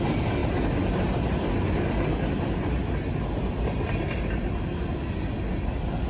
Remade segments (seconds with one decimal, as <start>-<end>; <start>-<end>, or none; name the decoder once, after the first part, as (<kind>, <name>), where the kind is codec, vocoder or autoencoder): none

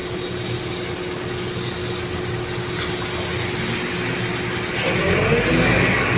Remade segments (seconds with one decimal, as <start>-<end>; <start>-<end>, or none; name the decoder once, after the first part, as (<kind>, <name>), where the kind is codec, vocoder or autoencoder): 0.6-1.8 (codec, DAC); 5.5-6.2